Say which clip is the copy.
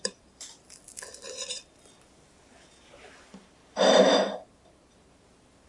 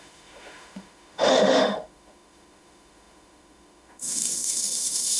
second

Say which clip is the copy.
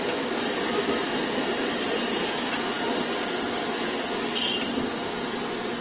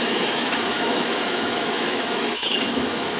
second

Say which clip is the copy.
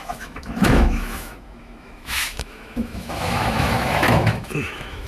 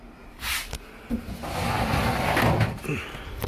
first